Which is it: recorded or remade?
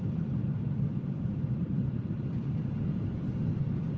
remade